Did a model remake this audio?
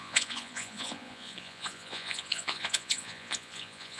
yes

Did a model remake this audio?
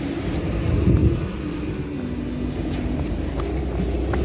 no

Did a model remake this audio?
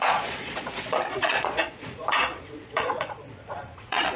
yes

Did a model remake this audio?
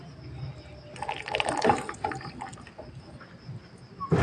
no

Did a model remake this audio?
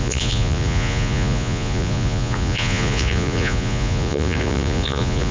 yes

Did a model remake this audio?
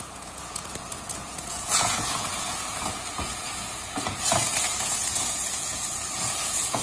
yes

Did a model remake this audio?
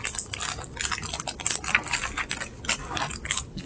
no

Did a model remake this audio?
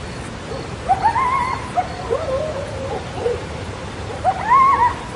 no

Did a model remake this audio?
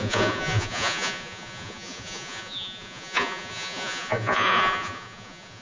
yes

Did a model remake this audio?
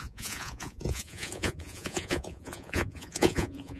yes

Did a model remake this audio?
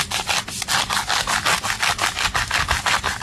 no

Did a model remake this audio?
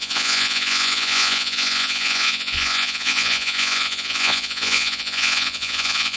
yes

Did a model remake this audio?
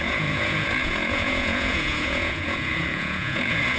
yes